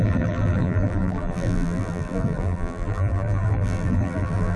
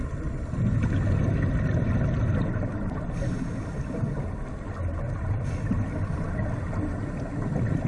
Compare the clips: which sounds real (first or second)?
second